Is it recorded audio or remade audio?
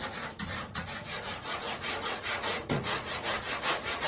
remade